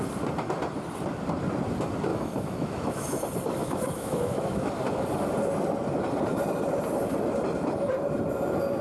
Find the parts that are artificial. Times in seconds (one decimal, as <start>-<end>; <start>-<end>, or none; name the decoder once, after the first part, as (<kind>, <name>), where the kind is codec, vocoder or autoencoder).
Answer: 2.1-3.2 (autoencoder, DAC-VAE); 3.6-4.7